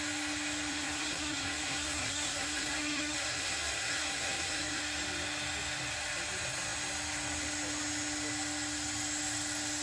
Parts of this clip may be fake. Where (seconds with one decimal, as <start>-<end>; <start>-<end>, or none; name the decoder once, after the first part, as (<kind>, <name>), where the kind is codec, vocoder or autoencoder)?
0.7-4.8 (codec, SNAC)